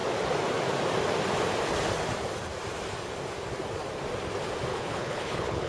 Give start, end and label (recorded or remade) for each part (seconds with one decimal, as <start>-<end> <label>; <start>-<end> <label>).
0.0-4.7 recorded; 4.7-5.7 remade